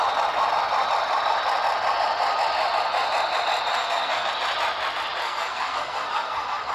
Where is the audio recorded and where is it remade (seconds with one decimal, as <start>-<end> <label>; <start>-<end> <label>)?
0.0-3.7 recorded; 3.7-4.3 remade; 4.3-5.2 recorded; 5.2-6.7 remade